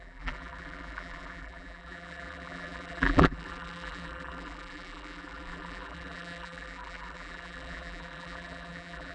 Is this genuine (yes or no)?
no